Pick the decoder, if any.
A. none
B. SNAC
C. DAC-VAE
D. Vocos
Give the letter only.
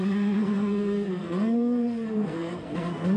B